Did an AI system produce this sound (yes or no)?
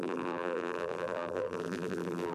yes